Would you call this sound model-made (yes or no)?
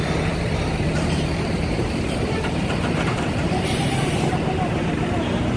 yes